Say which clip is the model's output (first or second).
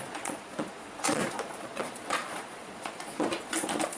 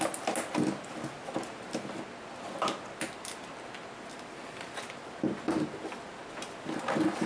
first